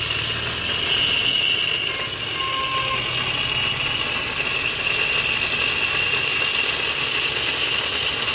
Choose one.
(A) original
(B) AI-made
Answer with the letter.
A